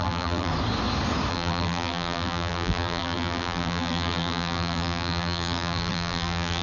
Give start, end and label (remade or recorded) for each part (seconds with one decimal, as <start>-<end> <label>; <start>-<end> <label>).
0.0-0.5 remade; 0.5-1.3 recorded; 1.3-6.6 remade